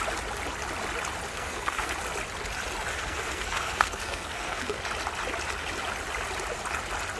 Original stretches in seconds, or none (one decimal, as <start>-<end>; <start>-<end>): 0.0-1.3; 1.9-2.9; 4.8-7.2